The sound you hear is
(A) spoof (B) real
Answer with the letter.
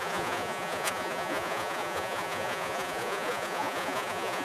A